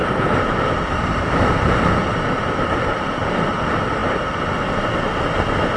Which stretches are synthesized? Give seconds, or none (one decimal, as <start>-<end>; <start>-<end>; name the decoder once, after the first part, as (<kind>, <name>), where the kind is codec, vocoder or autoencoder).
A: 0.0-3.5 (vocoder, BigVGAN v2)